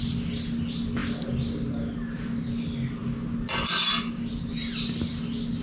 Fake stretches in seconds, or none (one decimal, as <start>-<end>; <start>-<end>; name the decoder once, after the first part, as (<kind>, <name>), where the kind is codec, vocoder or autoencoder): none